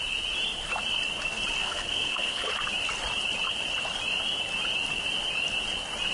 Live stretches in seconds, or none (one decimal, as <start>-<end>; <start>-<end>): 0.0-1.6; 2.5-6.1